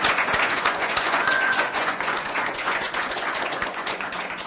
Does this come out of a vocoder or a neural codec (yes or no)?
yes